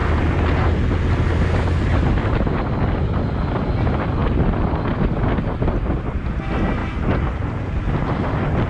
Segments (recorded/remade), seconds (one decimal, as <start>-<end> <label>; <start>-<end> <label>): 0.0-8.7 recorded